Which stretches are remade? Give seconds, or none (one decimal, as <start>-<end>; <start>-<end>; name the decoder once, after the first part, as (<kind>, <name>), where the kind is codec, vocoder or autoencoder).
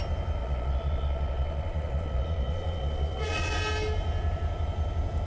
0.4-3.6 (vocoder, Vocos)